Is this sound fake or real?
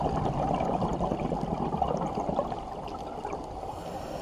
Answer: real